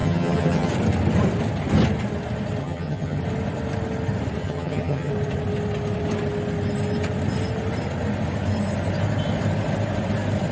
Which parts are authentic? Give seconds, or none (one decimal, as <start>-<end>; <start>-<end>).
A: 0.7-2.6; 3.2-4.4; 5.1-10.5